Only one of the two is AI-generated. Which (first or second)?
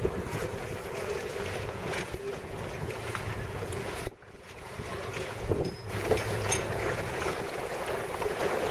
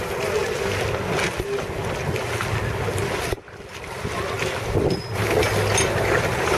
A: first